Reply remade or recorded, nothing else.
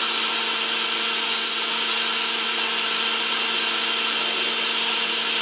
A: recorded